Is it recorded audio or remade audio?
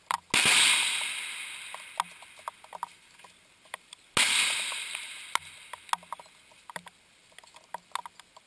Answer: recorded